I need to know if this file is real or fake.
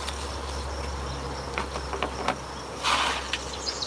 real